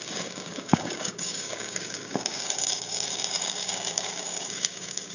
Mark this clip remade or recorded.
remade